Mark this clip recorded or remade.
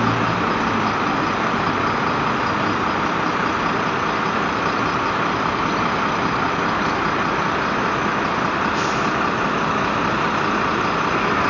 recorded